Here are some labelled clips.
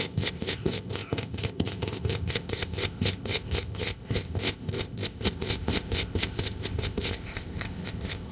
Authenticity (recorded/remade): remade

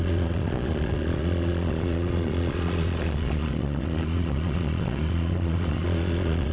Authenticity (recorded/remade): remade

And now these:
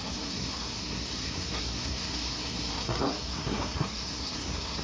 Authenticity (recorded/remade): remade